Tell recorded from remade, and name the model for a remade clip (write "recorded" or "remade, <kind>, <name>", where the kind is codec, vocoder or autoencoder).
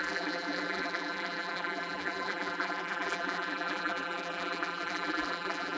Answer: remade, vocoder, BigVGAN v2